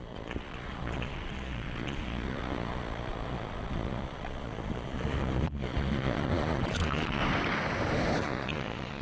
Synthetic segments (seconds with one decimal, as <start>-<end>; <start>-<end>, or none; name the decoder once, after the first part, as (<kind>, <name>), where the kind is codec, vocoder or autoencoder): 0.0-7.2 (vocoder, Vocos); 8.2-9.0